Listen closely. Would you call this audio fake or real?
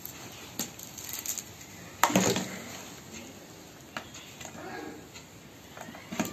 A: real